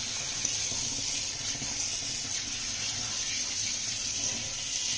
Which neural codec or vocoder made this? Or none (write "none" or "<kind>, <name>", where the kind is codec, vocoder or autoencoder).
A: none